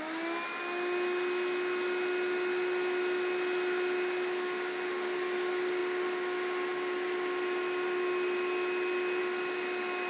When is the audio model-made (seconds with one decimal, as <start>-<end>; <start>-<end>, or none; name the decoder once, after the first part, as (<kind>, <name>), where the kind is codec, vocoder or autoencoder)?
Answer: none